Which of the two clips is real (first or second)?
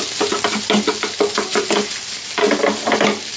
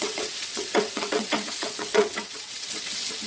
first